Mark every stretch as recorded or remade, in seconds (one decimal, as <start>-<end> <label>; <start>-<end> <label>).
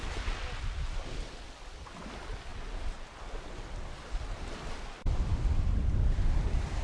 0.0-6.8 recorded